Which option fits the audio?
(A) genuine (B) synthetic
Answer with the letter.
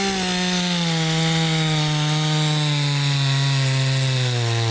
A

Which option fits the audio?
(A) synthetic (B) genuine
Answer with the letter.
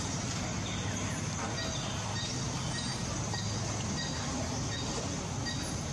B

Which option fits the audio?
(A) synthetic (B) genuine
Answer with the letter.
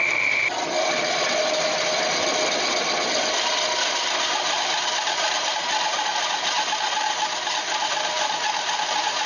B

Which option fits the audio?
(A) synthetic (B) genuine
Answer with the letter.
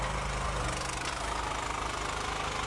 B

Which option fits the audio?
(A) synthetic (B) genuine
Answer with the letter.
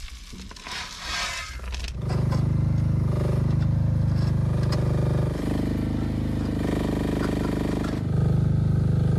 B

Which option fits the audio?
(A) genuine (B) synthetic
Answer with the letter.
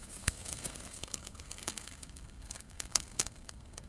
B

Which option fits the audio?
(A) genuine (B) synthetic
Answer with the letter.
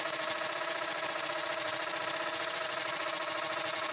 B